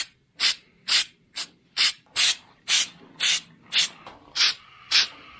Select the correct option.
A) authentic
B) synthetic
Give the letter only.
A